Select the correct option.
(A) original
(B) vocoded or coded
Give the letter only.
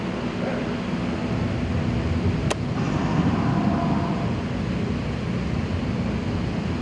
A